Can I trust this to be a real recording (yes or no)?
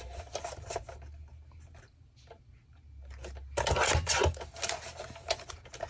yes